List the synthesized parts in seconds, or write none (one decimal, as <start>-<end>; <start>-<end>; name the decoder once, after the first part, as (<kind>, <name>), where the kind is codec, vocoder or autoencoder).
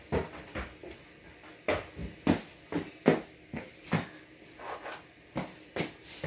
none